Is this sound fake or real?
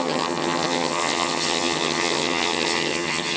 fake